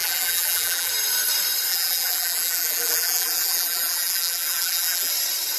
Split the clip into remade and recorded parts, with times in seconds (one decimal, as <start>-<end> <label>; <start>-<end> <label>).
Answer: 0.0-0.9 remade; 0.9-1.7 recorded; 1.7-5.1 remade; 5.1-5.6 recorded